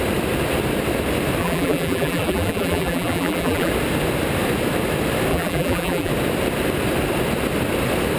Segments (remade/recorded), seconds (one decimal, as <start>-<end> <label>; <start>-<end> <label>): 0.0-1.4 recorded; 1.4-3.7 remade; 3.7-5.3 recorded; 5.3-6.1 remade; 6.1-8.2 recorded